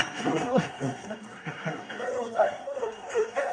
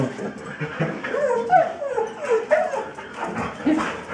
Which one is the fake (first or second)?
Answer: first